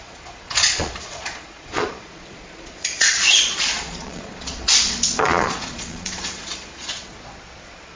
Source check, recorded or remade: remade